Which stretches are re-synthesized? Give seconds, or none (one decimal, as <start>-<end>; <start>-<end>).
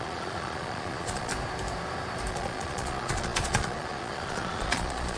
0.0-1.3; 2.3-5.2